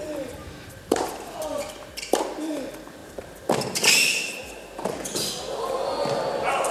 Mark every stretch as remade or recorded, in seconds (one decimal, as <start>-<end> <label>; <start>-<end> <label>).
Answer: 0.0-0.4 recorded; 0.4-1.1 remade; 1.1-6.7 recorded